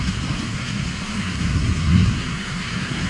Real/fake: fake